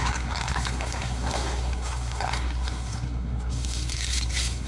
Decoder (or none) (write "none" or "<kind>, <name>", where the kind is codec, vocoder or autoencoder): codec, SNAC